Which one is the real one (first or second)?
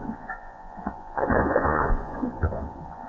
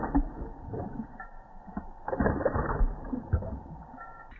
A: second